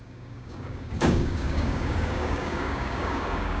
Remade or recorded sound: remade